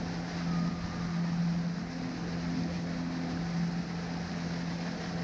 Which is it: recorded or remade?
recorded